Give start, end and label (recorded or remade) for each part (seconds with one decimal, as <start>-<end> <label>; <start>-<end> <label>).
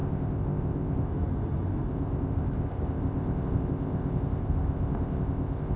0.0-1.1 remade; 1.1-1.9 recorded; 1.9-5.8 remade